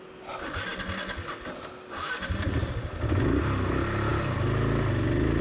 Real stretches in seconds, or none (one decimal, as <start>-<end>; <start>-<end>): 0.0-5.4